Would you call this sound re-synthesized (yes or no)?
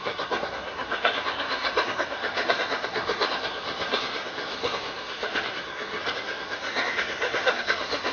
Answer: yes